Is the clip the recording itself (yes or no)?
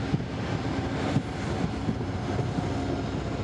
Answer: yes